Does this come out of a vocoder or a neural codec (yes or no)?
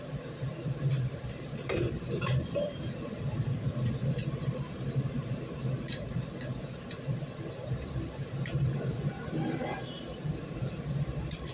yes